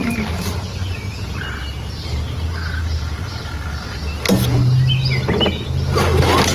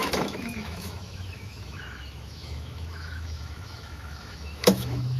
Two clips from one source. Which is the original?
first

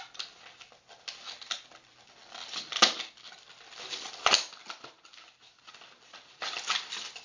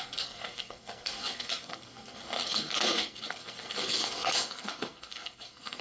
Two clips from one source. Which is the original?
first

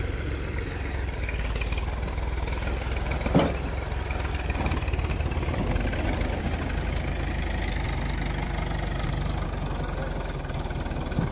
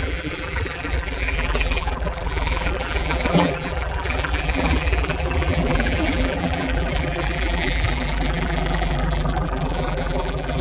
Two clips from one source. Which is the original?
first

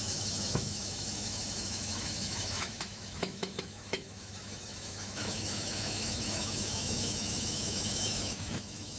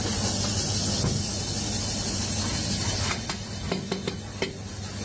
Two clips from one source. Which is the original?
second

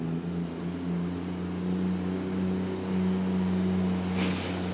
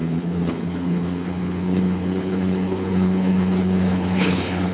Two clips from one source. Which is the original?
first